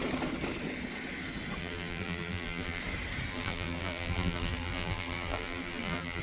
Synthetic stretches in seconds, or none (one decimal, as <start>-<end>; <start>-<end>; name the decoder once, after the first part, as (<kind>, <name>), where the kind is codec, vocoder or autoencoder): 1.6-2.8 (vocoder, BigVGAN v2); 3.3-6.2